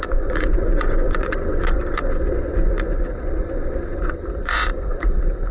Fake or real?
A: fake